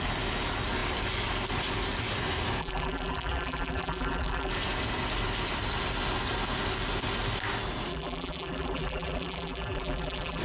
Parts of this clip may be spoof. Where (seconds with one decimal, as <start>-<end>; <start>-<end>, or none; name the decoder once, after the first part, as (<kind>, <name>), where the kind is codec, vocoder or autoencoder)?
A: 2.6-4.5 (vocoder, BigVGAN v2); 7.9-10.4